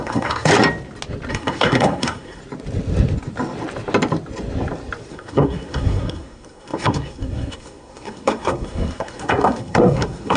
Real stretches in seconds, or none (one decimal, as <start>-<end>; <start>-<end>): 0.5-1.3; 2.4-5.1